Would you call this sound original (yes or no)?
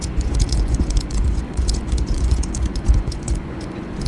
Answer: no